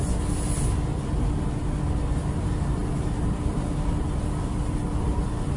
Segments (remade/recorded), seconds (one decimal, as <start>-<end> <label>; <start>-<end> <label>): 0.0-5.6 recorded